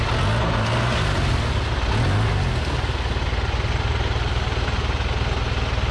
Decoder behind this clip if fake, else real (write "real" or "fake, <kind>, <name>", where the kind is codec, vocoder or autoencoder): real